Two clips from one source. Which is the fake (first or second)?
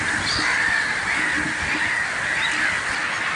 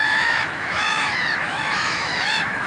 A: second